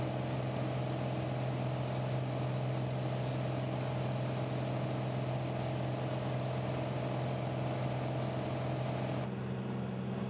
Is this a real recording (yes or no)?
yes